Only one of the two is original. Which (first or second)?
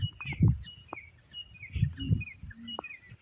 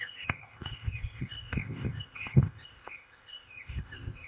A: first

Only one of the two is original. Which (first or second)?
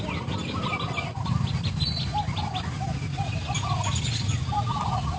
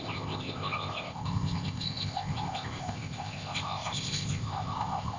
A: first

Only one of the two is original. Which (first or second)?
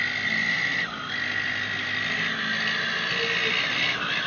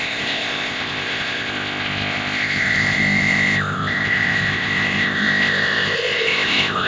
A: first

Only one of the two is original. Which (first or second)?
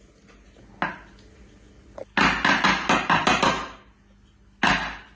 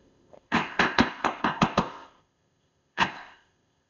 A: first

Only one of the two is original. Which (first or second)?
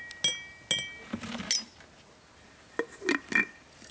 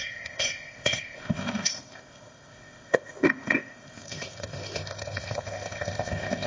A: first